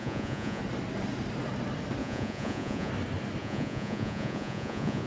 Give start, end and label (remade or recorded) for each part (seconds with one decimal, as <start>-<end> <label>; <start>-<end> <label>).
0.0-0.6 remade; 0.6-2.0 recorded; 2.0-2.9 remade; 2.9-3.4 recorded; 3.4-5.1 remade